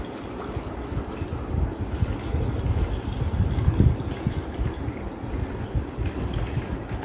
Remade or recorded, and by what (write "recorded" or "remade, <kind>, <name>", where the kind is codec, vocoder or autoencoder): recorded